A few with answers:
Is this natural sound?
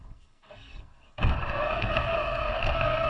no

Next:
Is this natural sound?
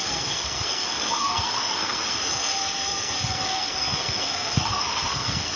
no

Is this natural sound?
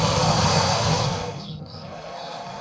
no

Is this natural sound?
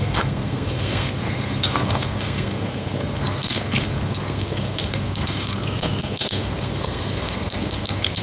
no